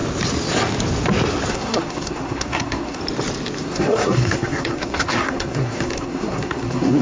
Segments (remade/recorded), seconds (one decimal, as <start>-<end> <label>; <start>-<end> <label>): 0.0-1.5 recorded; 1.5-3.0 remade; 3.0-3.6 recorded; 3.6-7.0 remade